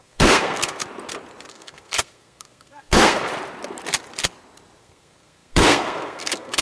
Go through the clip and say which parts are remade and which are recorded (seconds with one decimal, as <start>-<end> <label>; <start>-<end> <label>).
0.0-0.8 remade; 0.8-1.5 recorded; 1.5-3.3 remade; 3.3-4.8 recorded; 4.8-6.6 remade